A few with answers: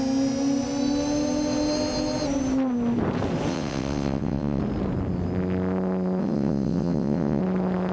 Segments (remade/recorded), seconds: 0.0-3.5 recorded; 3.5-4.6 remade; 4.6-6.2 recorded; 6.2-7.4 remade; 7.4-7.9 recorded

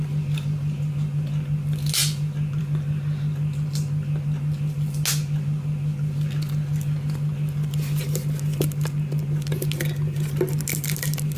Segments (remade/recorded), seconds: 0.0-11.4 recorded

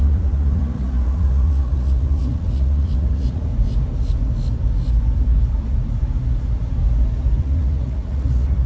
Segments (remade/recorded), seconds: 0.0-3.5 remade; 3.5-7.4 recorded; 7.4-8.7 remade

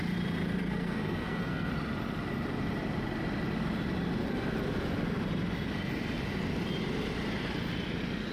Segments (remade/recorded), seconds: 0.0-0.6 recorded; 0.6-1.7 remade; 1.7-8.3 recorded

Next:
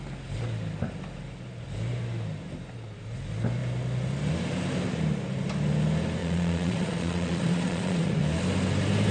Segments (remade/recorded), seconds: 0.0-6.2 recorded; 6.2-8.2 remade; 8.2-9.1 recorded

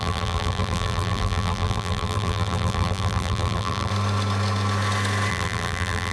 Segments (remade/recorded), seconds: 0.0-3.9 remade; 3.9-5.3 recorded; 5.3-6.1 remade

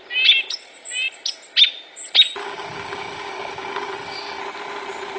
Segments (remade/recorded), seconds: 0.0-2.4 recorded; 2.4-4.4 remade; 4.4-5.2 recorded